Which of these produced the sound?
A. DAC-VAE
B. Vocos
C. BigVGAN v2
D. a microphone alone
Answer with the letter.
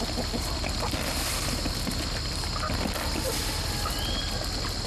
D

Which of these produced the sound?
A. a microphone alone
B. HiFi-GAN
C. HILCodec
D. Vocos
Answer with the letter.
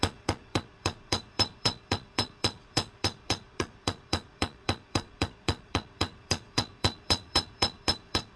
D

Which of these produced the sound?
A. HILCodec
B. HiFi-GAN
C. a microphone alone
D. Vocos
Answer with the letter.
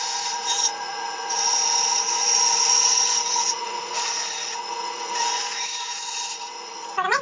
D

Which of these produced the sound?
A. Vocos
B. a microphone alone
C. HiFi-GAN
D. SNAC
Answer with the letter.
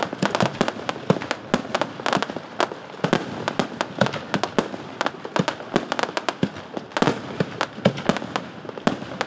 B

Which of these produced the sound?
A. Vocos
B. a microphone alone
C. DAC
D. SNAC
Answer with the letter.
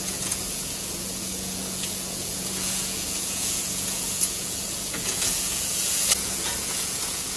A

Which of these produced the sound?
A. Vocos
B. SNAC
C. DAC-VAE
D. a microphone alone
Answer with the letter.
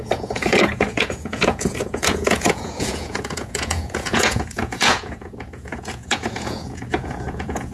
A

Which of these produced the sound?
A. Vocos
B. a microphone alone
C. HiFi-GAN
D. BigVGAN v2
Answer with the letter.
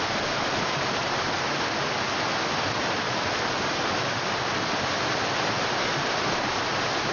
B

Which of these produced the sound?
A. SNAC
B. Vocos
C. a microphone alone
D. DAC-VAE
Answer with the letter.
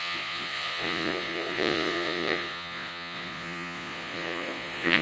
B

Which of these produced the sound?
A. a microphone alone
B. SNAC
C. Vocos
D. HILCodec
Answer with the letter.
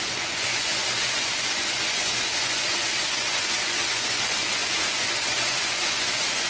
C